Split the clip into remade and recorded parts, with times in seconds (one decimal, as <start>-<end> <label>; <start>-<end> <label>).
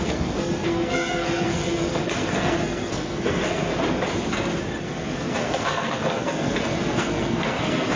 0.0-3.7 remade; 3.7-4.8 recorded; 4.8-8.0 remade